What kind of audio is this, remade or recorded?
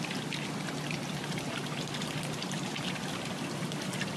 recorded